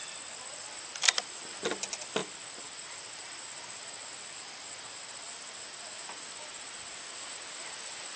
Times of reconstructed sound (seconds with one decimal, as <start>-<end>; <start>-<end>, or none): none